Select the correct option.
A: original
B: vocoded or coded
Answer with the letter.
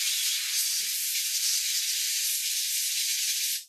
A